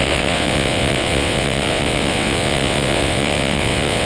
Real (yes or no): no